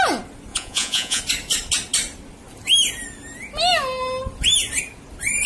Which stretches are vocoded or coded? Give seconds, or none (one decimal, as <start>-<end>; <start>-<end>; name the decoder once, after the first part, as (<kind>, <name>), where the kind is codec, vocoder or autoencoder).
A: 0.5-1.2 (vocoder, Vocos)